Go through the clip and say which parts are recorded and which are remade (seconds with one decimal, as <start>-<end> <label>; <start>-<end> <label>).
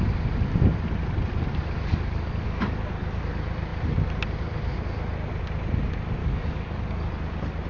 0.0-1.9 recorded; 1.9-3.2 remade; 3.2-6.2 recorded; 6.2-7.1 remade; 7.1-7.7 recorded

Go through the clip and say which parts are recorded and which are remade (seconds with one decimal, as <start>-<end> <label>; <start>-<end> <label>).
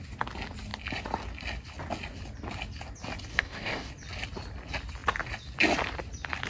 0.0-3.3 recorded; 3.3-3.9 remade; 3.9-6.5 recorded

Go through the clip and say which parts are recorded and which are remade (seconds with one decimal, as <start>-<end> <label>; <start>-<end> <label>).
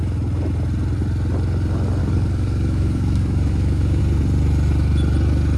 0.0-2.0 recorded; 2.0-4.0 remade; 4.0-5.6 recorded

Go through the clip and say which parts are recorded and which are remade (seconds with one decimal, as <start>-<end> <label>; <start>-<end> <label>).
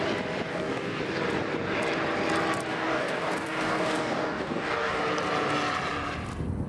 0.0-0.5 recorded; 0.5-1.0 remade; 1.0-2.7 recorded; 2.7-5.0 remade; 5.0-6.7 recorded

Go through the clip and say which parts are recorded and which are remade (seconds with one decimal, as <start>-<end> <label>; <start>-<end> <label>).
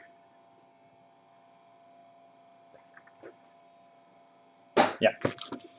0.0-5.8 recorded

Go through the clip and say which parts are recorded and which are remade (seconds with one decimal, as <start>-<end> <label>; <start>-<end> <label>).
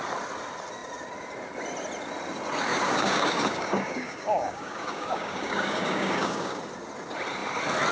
0.0-2.7 recorded; 2.7-6.6 remade; 6.6-7.9 recorded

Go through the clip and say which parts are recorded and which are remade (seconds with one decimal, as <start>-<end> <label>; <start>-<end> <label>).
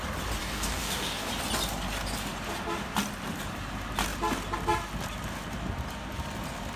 0.0-0.4 recorded; 0.4-1.3 remade; 1.3-6.8 recorded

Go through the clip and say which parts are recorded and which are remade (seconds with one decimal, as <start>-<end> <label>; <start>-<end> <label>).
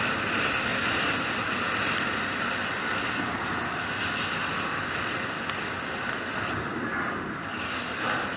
0.0-7.5 recorded; 7.5-8.0 remade; 8.0-8.4 recorded